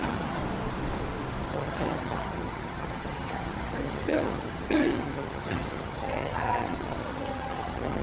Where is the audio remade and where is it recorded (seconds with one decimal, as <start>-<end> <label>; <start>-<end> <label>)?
0.0-0.4 remade; 0.4-1.5 recorded; 1.5-8.0 remade